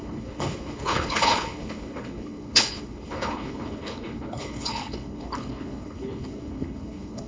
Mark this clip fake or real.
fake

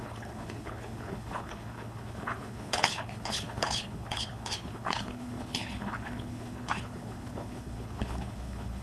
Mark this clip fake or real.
fake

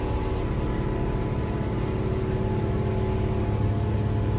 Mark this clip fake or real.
real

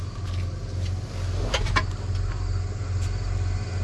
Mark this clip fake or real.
real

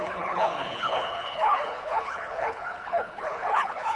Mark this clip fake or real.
fake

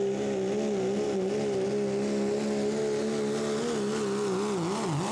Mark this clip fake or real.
real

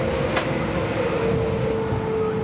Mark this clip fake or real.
real